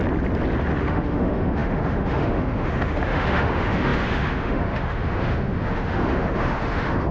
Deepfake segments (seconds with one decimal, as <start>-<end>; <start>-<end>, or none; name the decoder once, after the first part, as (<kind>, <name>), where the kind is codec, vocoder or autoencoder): 0.8-7.1 (autoencoder, DAC-VAE)